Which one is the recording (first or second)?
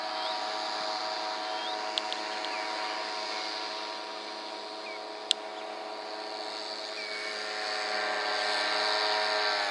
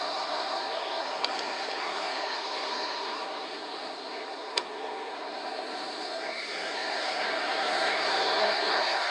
first